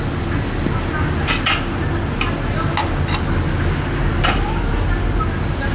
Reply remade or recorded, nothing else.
recorded